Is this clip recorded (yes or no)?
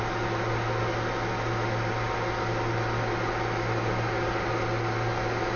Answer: yes